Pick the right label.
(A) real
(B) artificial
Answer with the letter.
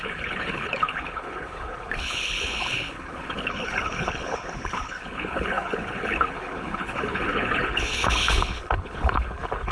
B